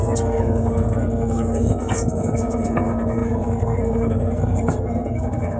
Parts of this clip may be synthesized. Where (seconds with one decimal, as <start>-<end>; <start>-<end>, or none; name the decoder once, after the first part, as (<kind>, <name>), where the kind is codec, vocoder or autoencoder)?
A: 0.0-5.6 (codec, SNAC)

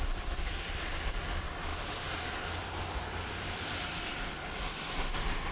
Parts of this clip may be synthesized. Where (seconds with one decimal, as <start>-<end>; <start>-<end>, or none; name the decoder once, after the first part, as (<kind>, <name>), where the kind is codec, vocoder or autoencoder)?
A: none

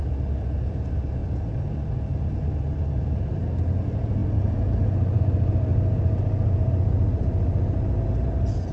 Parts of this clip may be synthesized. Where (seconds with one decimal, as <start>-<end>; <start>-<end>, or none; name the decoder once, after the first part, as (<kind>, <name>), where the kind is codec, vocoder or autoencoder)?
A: none

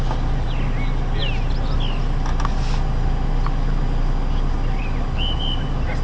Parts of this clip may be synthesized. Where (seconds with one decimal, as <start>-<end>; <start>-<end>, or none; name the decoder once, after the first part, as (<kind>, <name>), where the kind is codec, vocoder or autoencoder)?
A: none

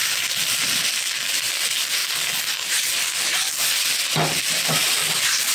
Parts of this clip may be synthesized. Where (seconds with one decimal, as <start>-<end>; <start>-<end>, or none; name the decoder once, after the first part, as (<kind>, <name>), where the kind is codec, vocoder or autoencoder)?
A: 0.0-2.0 (vocoder, BigVGAN v2); 4.6-5.5

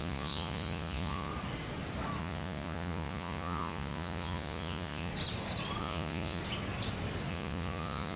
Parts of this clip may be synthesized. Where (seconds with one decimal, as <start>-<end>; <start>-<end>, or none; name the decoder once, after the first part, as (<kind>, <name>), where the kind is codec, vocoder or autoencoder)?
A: 0.0-1.3 (vocoder, Vocos); 2.2-5.1; 5.8-6.4; 7.3-8.2

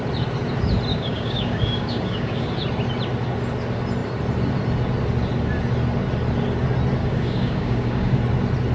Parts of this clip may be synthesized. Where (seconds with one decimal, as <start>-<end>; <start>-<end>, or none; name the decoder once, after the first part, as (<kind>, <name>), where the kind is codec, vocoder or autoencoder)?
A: 0.9-2.4 (codec, DAC); 7.0-8.2

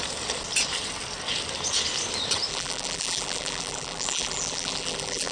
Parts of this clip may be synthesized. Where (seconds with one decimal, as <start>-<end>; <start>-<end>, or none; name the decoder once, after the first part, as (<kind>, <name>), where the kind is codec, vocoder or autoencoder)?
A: 2.5-5.3 (vocoder, BigVGAN v2)